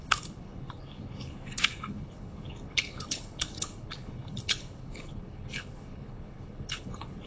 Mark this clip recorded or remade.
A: remade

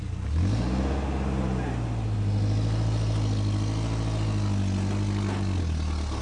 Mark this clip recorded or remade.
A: recorded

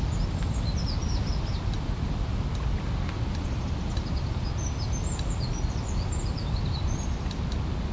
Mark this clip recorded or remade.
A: recorded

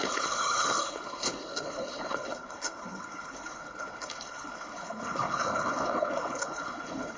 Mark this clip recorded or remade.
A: remade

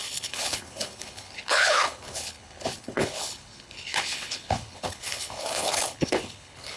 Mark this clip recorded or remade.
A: remade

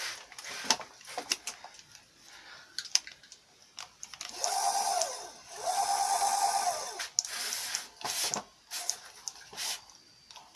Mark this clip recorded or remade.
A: recorded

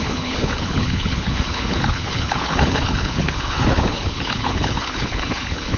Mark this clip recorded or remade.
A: remade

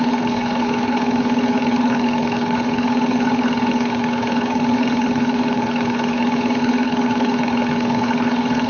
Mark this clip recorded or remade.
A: remade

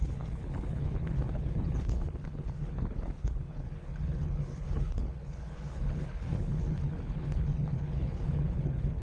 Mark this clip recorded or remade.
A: remade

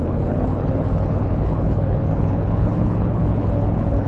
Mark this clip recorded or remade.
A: remade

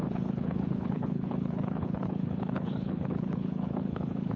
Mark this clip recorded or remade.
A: remade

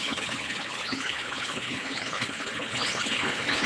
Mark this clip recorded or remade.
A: remade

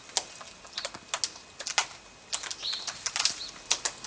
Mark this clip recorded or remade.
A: recorded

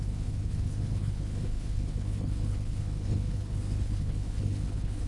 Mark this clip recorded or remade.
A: remade